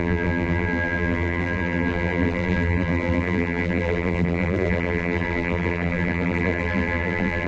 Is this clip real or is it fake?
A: fake